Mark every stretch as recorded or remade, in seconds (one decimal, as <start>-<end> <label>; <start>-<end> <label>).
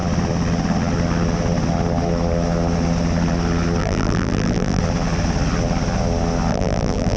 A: 0.0-3.8 recorded; 3.8-4.8 remade; 4.8-6.5 recorded; 6.5-7.2 remade